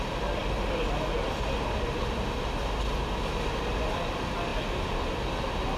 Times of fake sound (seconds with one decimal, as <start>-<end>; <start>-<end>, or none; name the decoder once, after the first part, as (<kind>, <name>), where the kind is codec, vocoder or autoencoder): 4.5-5.3 (vocoder, BigVGAN v2)